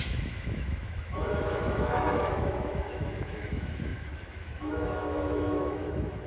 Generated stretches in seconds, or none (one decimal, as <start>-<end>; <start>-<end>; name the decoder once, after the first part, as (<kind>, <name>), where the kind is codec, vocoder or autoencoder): 0.0-6.3 (autoencoder, DAC-VAE)